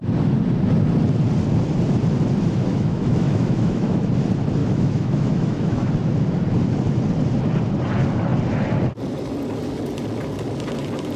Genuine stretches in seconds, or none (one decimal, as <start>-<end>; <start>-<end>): 0.0-2.7; 4.1-4.6; 5.9-11.2